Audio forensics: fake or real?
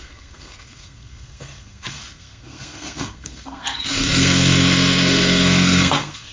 fake